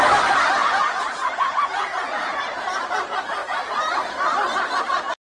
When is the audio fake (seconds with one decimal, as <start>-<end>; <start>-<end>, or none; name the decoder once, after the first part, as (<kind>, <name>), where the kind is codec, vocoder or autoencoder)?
0.6-2.4 (vocoder, Vocos)